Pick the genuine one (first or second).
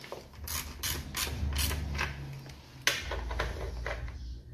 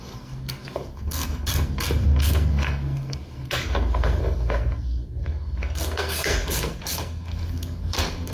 first